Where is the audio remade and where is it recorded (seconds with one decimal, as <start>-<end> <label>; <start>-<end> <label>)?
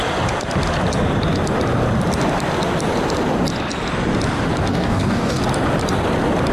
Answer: 0.0-4.7 recorded; 4.7-5.4 remade; 5.4-6.5 recorded